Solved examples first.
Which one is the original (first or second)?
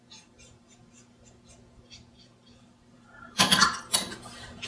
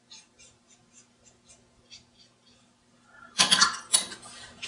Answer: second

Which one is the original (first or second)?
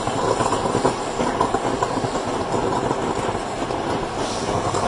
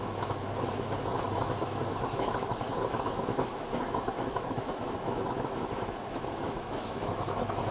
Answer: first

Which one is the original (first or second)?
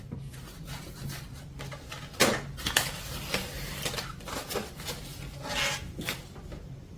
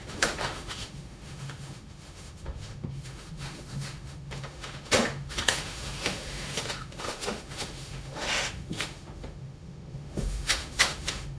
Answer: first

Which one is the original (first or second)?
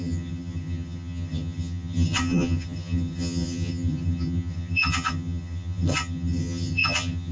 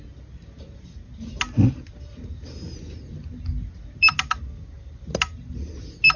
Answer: second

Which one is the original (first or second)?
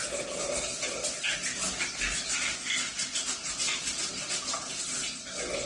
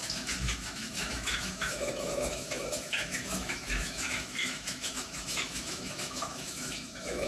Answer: first